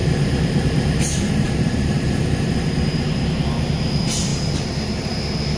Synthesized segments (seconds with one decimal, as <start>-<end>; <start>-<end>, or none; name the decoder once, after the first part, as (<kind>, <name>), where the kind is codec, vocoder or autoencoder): 0.0-3.4 (vocoder, BigVGAN v2); 4.3-5.1